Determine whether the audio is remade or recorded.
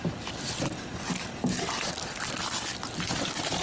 recorded